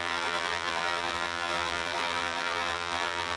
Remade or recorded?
remade